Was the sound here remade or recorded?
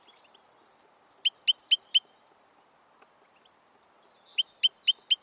recorded